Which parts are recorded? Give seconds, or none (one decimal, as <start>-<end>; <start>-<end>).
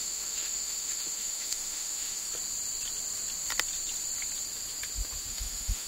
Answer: 2.3-5.3